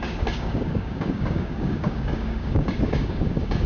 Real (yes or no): no